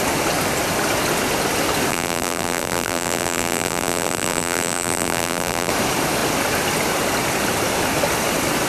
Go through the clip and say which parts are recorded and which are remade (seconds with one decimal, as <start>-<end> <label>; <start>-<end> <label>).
0.0-1.9 recorded; 1.9-5.7 remade; 5.7-8.7 recorded